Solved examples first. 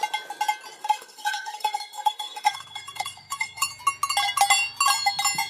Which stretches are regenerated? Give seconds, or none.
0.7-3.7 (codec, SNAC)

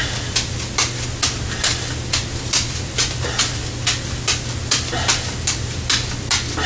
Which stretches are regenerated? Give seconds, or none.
none